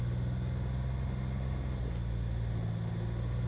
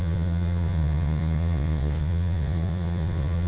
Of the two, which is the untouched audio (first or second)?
first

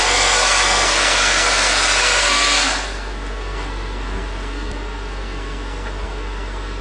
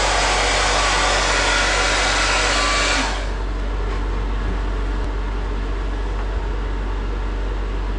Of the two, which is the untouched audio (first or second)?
second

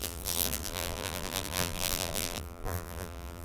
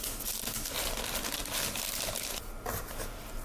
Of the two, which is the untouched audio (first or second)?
second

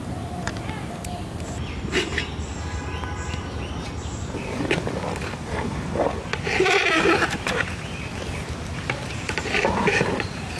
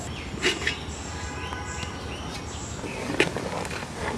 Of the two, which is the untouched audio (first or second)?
second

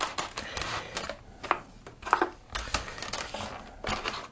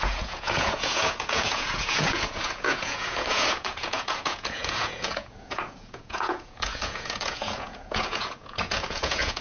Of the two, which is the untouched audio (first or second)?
first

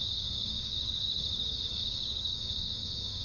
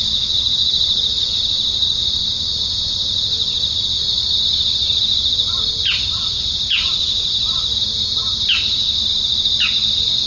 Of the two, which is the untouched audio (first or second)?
second